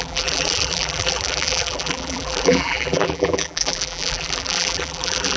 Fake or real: fake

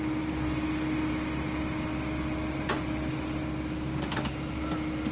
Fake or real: real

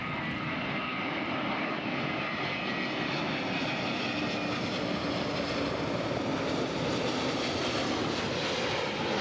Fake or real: real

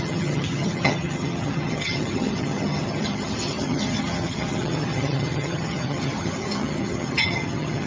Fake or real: fake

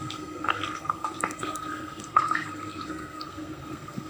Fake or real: fake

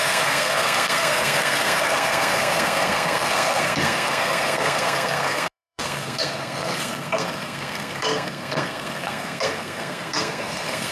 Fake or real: fake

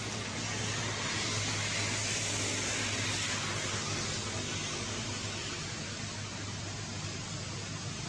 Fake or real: real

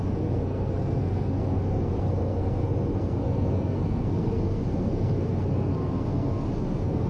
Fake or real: fake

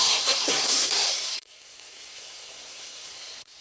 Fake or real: fake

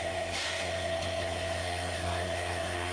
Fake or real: fake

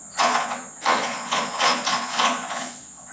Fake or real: fake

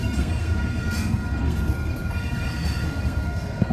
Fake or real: fake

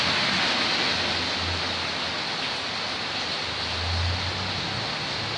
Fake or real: real